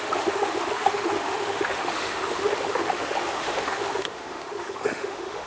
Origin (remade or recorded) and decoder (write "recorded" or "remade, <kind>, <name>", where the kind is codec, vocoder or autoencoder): remade, autoencoder, DAC-VAE